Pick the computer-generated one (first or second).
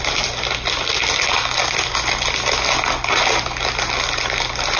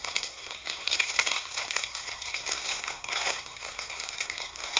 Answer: second